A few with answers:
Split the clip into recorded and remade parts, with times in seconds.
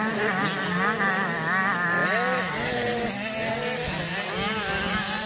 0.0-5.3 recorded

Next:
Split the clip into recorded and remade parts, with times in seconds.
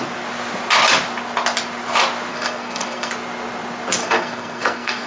0.0-2.3 recorded; 2.3-3.1 remade; 3.1-4.0 recorded; 4.0-5.1 remade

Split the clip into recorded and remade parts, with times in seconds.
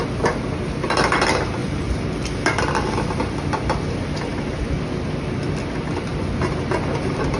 0.0-1.6 recorded; 1.6-2.6 remade; 2.6-7.4 recorded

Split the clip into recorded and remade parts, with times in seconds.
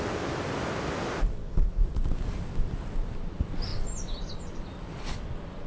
0.0-1.4 recorded; 1.4-1.9 remade; 1.9-5.7 recorded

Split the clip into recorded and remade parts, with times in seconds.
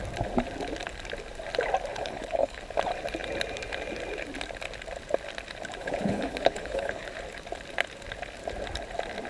0.0-1.9 recorded; 1.9-2.6 remade; 2.6-5.8 recorded; 5.8-7.1 remade; 7.1-9.3 recorded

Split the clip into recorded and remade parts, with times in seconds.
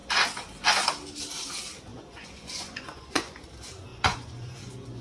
0.0-1.9 recorded; 1.9-3.4 remade; 3.4-3.9 recorded; 3.9-5.0 remade